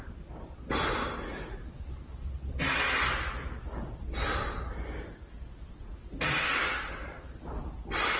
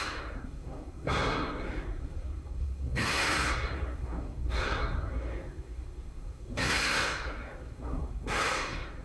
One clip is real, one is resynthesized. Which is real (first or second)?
first